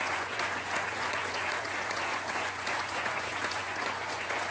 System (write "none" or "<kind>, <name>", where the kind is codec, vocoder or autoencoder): vocoder, Vocos